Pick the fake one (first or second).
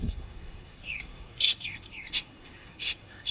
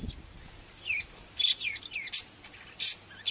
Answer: first